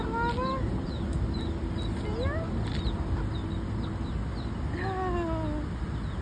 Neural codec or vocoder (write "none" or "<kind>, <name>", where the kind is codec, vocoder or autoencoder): none